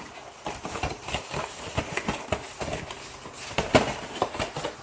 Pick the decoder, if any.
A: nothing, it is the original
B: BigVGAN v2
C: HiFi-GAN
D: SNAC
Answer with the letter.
A